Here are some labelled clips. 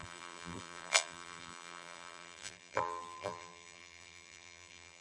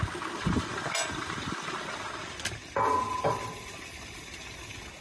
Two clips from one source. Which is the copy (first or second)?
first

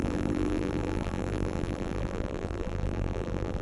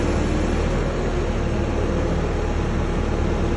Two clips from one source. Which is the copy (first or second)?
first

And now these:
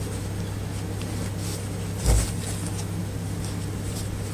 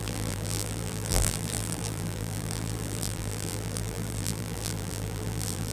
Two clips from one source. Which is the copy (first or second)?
second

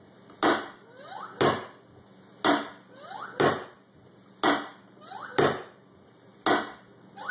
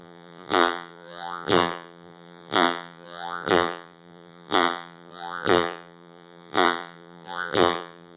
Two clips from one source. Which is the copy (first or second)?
second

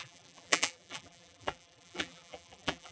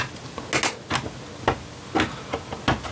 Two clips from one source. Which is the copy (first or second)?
first